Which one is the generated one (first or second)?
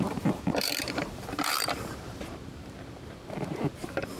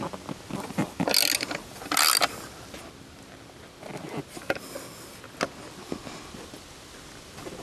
first